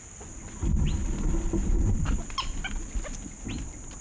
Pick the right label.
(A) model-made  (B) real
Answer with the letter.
B